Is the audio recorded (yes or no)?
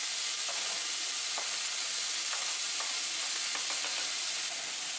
yes